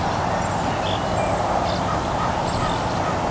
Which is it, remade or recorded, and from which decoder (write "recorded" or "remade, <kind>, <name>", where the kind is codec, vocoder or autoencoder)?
recorded